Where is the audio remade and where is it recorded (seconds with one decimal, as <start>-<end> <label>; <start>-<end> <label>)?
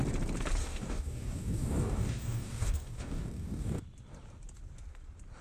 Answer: 0.0-0.6 recorded; 0.6-3.8 remade; 3.8-5.4 recorded